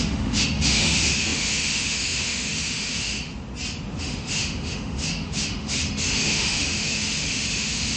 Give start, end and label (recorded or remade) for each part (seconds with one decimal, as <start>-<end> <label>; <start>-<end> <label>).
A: 0.0-3.3 remade; 3.3-4.0 recorded; 4.0-8.0 remade